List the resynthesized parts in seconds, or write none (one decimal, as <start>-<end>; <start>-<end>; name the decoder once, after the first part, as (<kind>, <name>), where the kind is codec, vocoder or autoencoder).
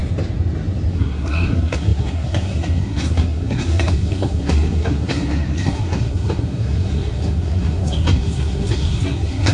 0.9-9.5 (codec, SNAC)